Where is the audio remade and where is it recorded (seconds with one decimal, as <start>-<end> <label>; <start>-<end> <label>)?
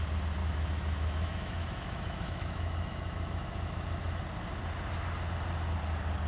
0.0-0.4 recorded; 0.4-4.2 remade; 4.2-6.3 recorded